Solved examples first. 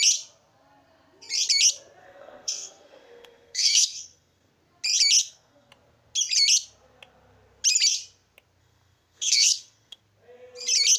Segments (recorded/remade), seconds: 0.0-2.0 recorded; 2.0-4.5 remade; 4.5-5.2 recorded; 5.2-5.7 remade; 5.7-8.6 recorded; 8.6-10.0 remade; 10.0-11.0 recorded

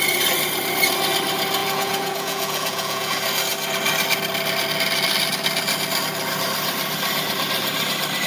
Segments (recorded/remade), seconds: 0.0-1.6 recorded; 1.6-3.1 remade; 3.1-8.3 recorded

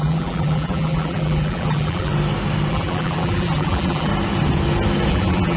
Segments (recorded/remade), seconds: 0.0-2.1 remade; 2.1-2.7 recorded; 2.7-4.1 remade; 4.1-5.1 recorded; 5.1-5.6 remade